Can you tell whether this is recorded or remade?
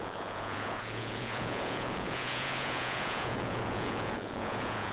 remade